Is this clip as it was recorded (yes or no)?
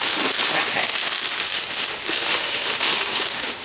no